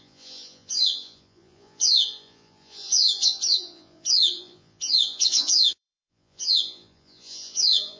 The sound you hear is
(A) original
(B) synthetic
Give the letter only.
B